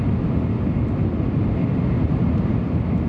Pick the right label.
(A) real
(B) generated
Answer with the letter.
A